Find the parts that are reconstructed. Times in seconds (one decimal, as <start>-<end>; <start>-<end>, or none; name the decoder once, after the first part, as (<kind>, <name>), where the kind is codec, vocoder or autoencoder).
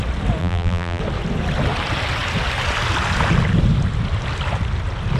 0.4-1.0 (vocoder, BigVGAN v2)